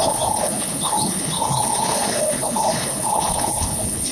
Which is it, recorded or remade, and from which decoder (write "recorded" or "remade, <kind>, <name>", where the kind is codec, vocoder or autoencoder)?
remade, codec, HILCodec